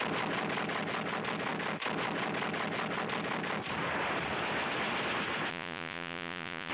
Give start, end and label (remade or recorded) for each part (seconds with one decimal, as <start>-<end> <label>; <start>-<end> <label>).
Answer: 0.0-5.5 recorded; 5.5-6.7 remade